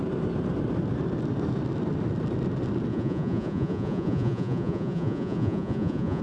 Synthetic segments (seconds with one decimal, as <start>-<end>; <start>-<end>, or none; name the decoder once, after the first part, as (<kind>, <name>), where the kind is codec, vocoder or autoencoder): 2.9-6.2 (vocoder, Vocos)